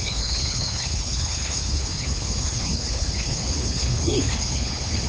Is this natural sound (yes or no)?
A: no